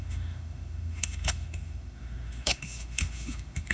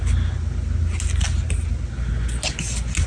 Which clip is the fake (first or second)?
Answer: first